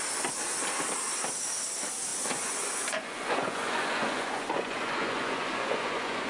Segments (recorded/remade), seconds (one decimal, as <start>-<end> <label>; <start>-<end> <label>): 0.0-2.1 recorded; 2.1-6.3 remade